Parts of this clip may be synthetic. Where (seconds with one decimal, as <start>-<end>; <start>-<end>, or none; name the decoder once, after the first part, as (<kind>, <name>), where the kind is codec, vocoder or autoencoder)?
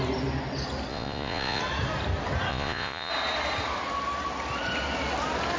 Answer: 0.9-1.6 (vocoder, Vocos); 2.5-3.1